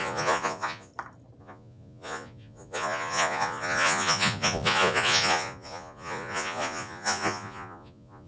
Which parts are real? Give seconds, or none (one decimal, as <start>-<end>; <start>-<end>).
0.9-1.4